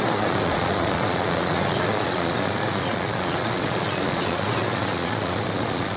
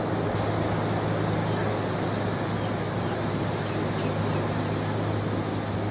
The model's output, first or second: first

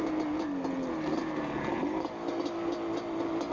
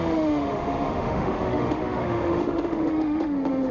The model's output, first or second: second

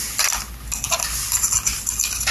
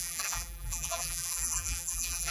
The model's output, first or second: second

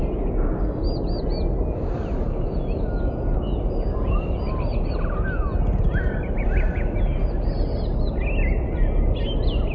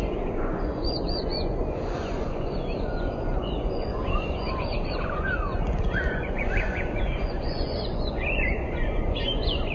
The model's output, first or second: second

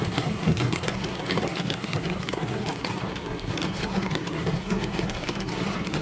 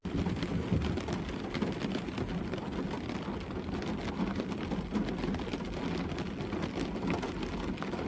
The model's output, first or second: first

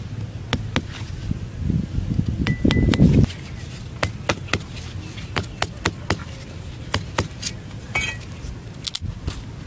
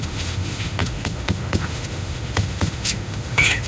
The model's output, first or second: second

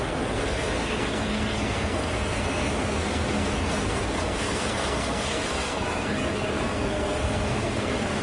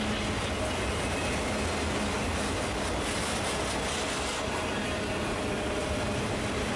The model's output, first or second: first